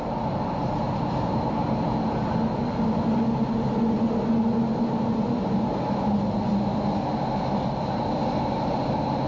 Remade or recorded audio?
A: recorded